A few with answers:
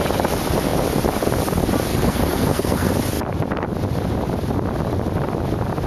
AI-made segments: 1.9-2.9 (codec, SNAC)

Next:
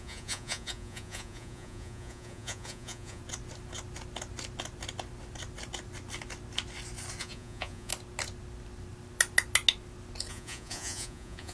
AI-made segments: 0.0-3.2 (vocoder, Vocos); 7.2-7.9; 10.3-11.5

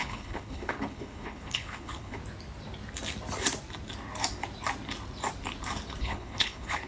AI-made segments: 0.0-2.2 (codec, HILCodec); 6.0-6.9

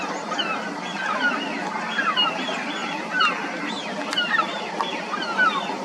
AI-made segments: none

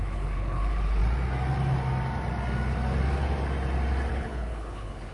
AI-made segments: 0.0-1.0 (codec, HILCodec); 4.1-5.1

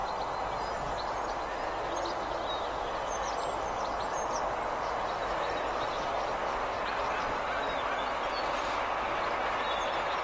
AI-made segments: none

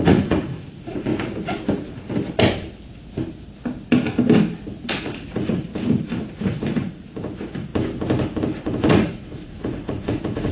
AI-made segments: 0.0-1.1 (vocoder, Vocos); 4.9-5.7; 6.4-7.7; 8.6-10.5

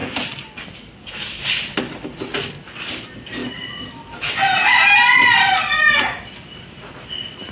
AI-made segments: none